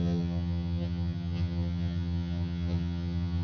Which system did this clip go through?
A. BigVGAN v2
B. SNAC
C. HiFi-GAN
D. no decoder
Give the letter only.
C